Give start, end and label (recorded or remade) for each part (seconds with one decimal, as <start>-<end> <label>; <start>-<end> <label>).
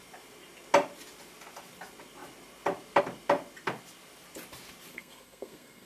0.0-4.9 recorded; 4.9-5.9 remade